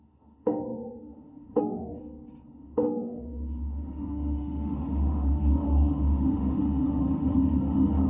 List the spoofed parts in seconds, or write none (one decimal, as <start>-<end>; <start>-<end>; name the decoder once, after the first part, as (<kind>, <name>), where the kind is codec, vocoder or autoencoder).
0.0-2.0 (autoencoder, DAC-VAE); 2.5-8.1